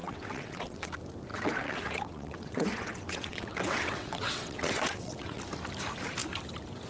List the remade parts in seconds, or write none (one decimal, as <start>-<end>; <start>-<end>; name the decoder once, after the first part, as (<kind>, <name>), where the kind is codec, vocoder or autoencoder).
0.0-0.9 (vocoder, WaveNeXt); 1.3-5.4